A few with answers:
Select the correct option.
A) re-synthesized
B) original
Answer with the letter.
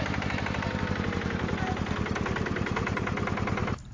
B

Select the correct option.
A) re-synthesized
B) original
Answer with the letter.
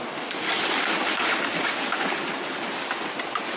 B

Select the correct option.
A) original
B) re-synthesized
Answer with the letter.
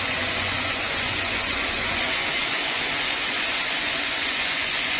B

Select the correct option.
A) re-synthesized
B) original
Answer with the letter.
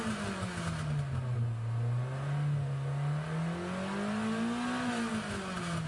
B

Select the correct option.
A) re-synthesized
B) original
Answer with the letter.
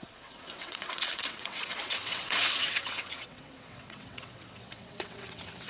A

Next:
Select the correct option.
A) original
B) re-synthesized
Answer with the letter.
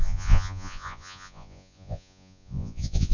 B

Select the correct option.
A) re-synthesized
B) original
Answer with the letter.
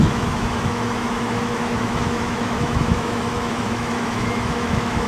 A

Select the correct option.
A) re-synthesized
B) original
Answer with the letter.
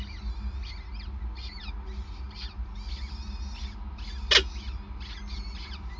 B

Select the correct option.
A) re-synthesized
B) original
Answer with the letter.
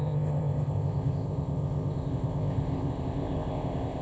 A